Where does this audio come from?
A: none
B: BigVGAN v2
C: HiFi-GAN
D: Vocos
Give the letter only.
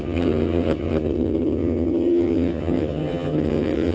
C